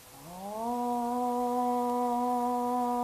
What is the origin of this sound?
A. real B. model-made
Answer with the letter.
A